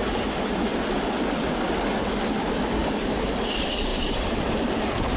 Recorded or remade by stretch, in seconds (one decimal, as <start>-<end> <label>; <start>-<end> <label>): 0.0-2.8 recorded; 2.8-3.5 remade; 3.5-3.9 recorded; 3.9-4.8 remade; 4.8-5.2 recorded